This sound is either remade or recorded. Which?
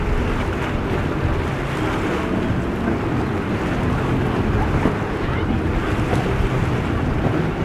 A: recorded